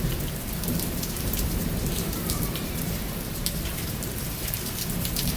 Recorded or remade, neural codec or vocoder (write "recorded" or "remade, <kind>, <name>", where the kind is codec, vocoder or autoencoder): remade, vocoder, BigVGAN v2